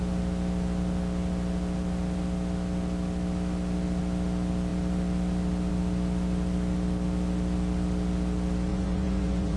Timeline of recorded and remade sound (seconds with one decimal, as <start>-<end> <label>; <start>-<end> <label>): 0.0-8.7 recorded; 8.7-9.6 remade